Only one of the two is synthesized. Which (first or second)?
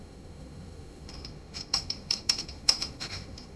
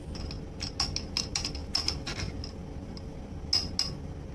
first